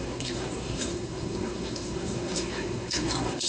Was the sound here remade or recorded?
remade